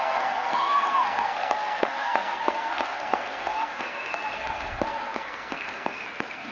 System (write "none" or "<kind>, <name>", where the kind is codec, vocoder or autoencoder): codec, SNAC